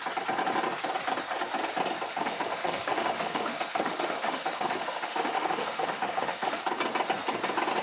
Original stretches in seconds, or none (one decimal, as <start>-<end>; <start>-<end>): 0.0-2.1; 6.6-7.8